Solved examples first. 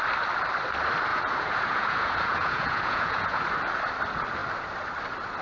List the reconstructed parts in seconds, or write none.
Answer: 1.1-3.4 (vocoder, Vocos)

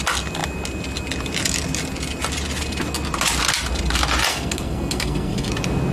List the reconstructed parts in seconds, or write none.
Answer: 4.3-5.5 (codec, SNAC)

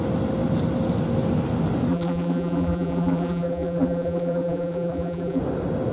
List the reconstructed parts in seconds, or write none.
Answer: 1.9-5.4 (vocoder, BigVGAN v2)